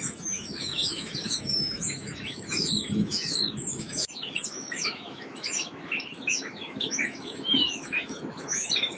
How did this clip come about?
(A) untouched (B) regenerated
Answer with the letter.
B